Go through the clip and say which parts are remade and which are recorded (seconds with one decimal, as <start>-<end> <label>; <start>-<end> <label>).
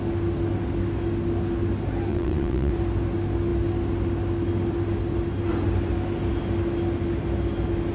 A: 0.0-2.1 recorded; 2.1-2.7 remade; 2.7-7.9 recorded